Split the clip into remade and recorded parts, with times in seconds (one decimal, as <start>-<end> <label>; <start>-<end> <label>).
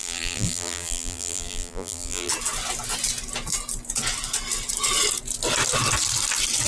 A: 0.0-2.3 remade; 2.3-6.7 recorded